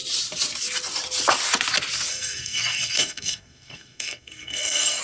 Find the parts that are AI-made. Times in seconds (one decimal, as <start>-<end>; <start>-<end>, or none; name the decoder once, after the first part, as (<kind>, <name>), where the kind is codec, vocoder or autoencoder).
2.1-5.0 (codec, SNAC)